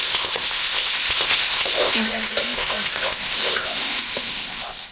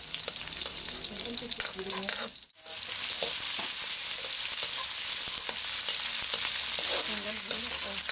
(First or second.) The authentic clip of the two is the second